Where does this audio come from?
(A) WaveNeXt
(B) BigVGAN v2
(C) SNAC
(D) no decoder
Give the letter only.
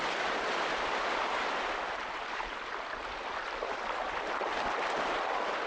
D